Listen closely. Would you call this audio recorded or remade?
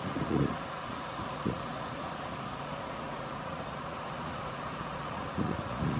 remade